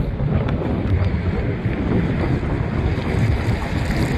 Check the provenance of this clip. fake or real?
real